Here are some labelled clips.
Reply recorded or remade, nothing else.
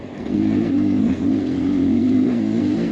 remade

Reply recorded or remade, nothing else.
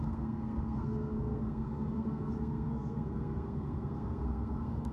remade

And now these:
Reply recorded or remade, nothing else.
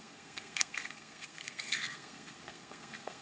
remade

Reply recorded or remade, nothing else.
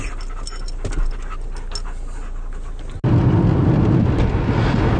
recorded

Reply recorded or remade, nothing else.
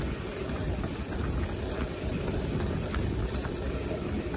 recorded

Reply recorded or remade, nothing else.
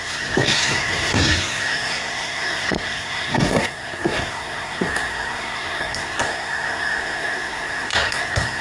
remade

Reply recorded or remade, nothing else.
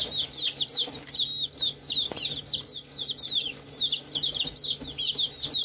recorded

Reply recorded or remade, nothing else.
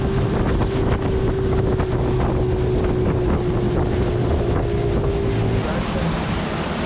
recorded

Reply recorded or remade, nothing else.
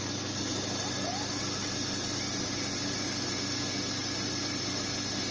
recorded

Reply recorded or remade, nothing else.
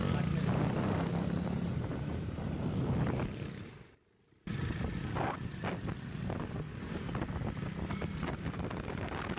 recorded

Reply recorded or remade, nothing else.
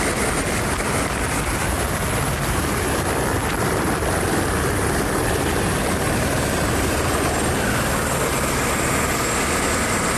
recorded